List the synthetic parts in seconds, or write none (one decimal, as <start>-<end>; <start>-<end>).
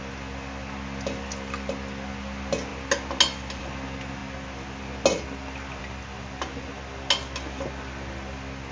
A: none